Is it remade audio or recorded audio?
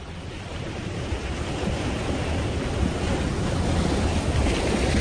recorded